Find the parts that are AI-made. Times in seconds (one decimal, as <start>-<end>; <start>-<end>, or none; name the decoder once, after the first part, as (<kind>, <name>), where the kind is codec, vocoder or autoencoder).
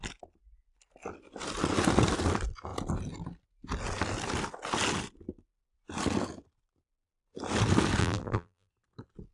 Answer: 8.0-8.7 (vocoder, BigVGAN v2)